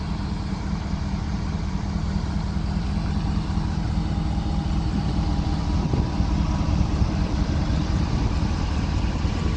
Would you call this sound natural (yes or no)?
no